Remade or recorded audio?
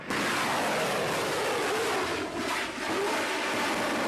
recorded